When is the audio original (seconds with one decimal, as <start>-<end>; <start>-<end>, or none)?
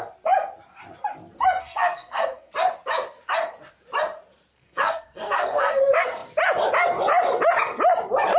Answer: 0.0-1.6; 2.5-4.5; 5.8-8.4